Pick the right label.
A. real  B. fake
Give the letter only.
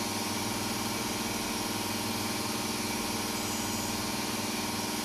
A